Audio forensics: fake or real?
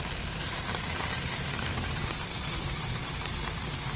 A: fake